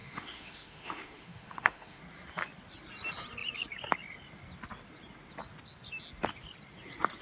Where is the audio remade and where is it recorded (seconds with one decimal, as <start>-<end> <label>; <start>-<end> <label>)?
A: 0.0-2.0 remade; 2.0-7.2 recorded